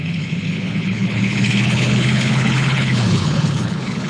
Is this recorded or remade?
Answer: remade